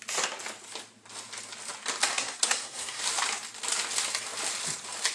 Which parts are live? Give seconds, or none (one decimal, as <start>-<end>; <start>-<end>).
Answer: 0.0-2.1; 3.0-5.1